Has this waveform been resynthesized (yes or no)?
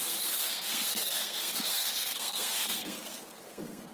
yes